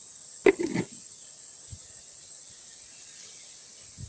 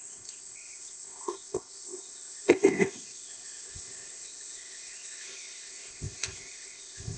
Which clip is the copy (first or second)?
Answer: second